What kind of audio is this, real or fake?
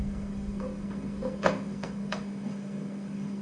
fake